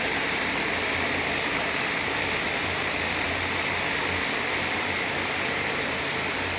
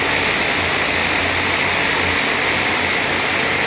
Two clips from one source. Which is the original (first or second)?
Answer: second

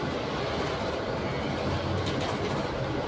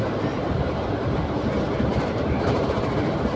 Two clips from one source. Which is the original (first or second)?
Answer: first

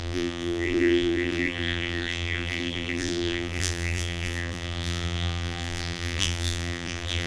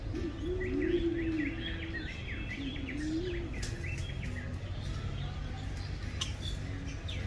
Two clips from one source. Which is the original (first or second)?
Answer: second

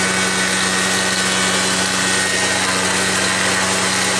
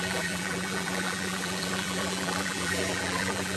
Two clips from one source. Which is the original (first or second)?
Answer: first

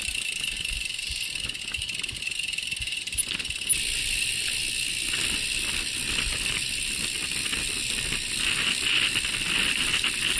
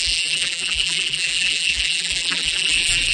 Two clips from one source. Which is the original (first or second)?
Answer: first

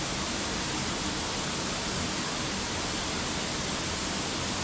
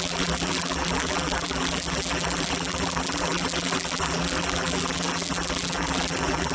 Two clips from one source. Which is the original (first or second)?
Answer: first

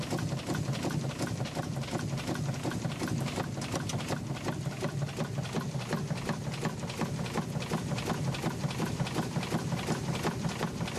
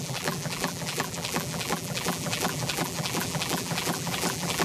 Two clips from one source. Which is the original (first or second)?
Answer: first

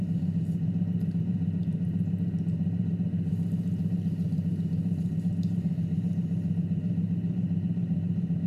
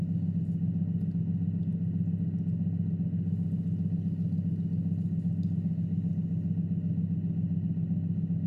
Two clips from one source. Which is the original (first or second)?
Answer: second